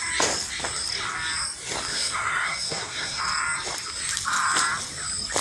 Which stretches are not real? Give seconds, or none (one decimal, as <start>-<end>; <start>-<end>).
1.9-3.2